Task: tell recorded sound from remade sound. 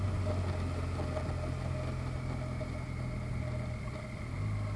recorded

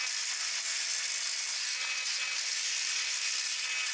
recorded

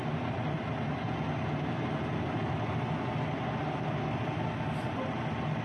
recorded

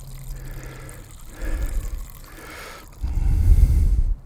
recorded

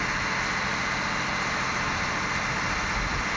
recorded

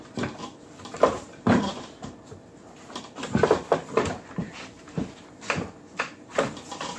remade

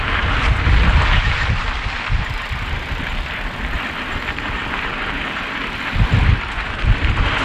remade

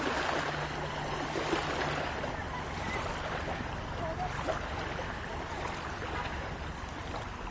recorded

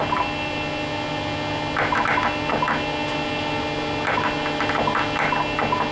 recorded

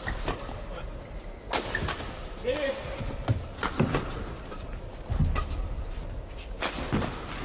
recorded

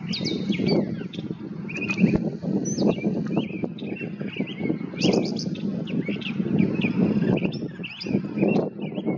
recorded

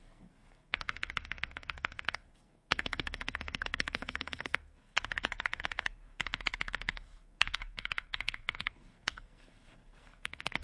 remade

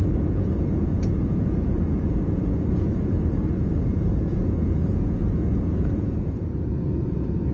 remade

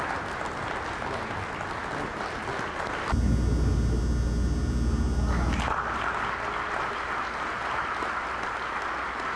recorded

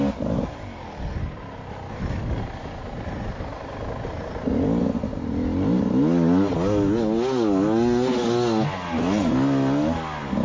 recorded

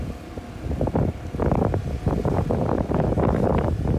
recorded